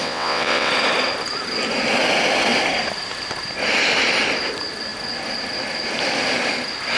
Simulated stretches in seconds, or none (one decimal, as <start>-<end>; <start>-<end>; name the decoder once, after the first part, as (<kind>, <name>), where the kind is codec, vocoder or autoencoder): 0.0-0.7 (vocoder, WaveNeXt)